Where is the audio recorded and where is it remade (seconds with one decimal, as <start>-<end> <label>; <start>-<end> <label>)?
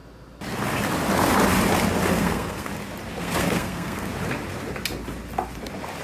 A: 0.0-2.1 recorded; 2.1-2.7 remade; 2.7-3.2 recorded; 3.2-4.1 remade; 4.1-6.0 recorded